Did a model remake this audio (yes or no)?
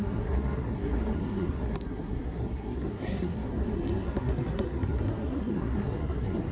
yes